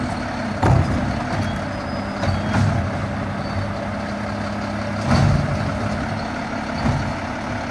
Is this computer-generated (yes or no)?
no